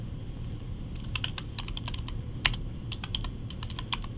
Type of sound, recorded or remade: recorded